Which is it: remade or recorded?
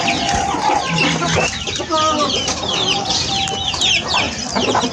recorded